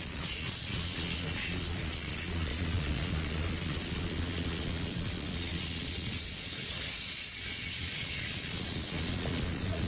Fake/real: fake